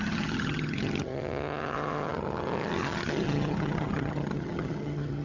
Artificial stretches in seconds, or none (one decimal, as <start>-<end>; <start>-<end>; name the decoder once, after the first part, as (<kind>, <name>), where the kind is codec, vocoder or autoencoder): 0.0-5.2 (vocoder, HiFi-GAN)